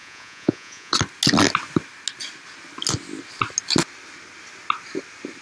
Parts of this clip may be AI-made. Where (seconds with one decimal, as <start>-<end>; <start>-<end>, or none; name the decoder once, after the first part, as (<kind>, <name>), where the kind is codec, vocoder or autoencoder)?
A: 0.0-0.9 (vocoder, Vocos)